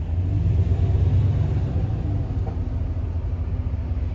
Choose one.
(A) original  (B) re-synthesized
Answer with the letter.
A